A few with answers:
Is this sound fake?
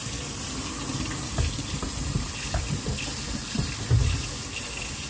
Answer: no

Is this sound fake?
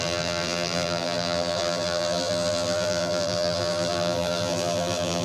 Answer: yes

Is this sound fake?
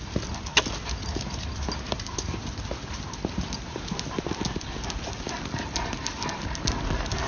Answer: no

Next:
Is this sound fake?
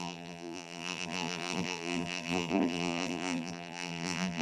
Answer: yes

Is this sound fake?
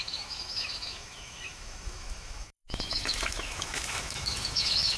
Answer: yes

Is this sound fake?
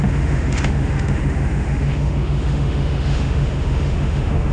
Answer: yes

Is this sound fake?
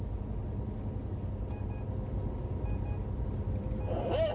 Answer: no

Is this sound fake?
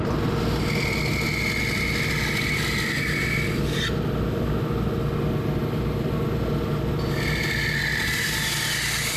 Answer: no